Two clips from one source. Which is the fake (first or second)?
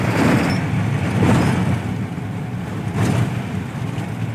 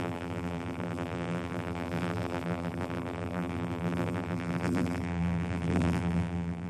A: second